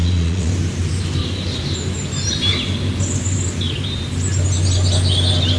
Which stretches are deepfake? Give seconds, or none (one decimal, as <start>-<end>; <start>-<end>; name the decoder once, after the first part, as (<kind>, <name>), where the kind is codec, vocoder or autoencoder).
0.0-0.5 (vocoder, Vocos)